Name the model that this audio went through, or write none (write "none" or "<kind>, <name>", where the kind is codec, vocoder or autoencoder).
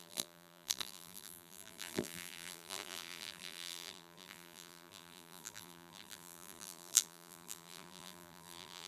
vocoder, BigVGAN v2